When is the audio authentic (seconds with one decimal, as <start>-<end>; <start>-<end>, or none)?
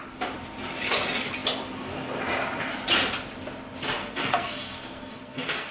0.0-4.0